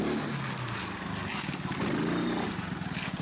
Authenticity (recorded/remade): recorded